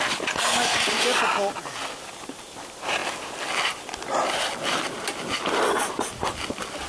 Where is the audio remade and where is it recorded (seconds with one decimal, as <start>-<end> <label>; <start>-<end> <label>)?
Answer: 0.0-6.9 recorded

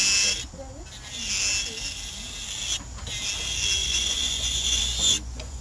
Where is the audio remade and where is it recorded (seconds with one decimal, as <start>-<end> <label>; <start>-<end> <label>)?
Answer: 0.0-3.8 recorded; 3.8-5.6 remade